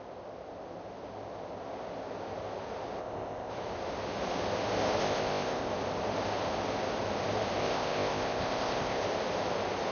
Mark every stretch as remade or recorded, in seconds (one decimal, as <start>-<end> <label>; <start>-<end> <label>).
0.0-3.0 recorded; 3.0-3.5 remade; 3.5-5.0 recorded; 5.0-5.7 remade; 5.7-7.6 recorded; 7.6-9.0 remade; 9.0-9.9 recorded